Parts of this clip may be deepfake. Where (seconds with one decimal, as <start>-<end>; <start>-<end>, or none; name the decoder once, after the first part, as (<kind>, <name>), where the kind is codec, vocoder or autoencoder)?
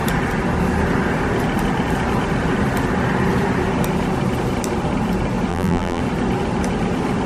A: 5.5-6.0 (vocoder, BigVGAN v2)